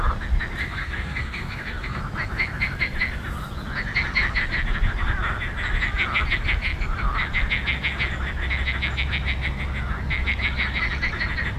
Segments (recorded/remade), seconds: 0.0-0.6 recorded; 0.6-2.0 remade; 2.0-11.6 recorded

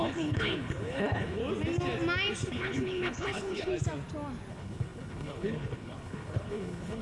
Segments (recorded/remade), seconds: 0.0-1.4 remade; 1.4-2.5 recorded; 2.5-3.7 remade; 3.7-4.5 recorded; 4.5-7.0 remade

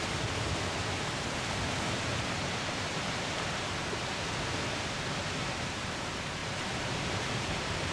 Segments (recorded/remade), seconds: 0.0-6.4 recorded; 6.4-7.9 remade

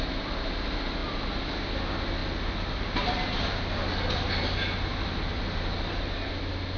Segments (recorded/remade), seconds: 0.0-6.8 recorded

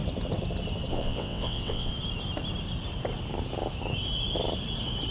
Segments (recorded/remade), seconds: 0.0-0.9 recorded; 0.9-1.9 remade; 1.9-5.1 recorded

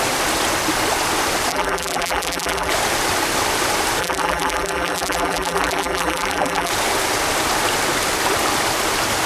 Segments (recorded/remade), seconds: 0.0-1.5 recorded; 1.5-2.7 remade; 2.7-4.0 recorded; 4.0-6.7 remade; 6.7-9.3 recorded

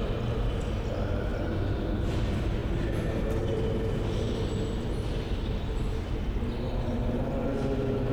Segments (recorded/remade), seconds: 0.0-8.1 recorded

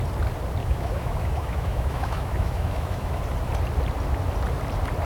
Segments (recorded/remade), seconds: 0.0-0.6 recorded; 0.6-3.2 remade; 3.2-5.0 recorded